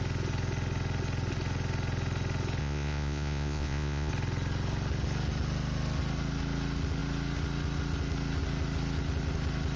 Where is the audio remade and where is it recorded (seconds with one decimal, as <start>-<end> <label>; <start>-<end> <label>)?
0.0-2.6 recorded; 2.6-4.1 remade; 4.1-9.8 recorded